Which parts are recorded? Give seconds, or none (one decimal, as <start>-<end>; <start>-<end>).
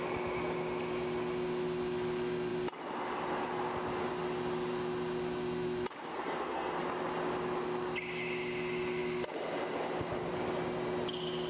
0.0-6.1; 6.8-11.5